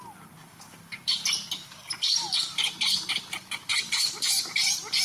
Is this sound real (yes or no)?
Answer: yes